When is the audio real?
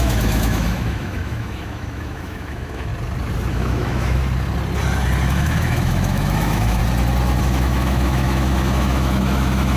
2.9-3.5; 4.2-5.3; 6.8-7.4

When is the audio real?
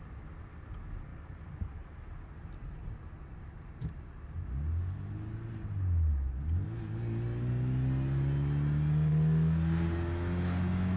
0.0-11.0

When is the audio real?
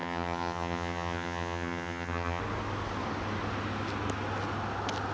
2.4-5.1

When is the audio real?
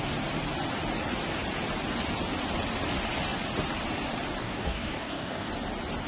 0.0-4.4; 5.5-6.1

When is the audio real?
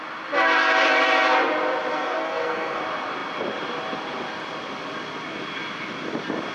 0.0-1.9; 2.8-6.5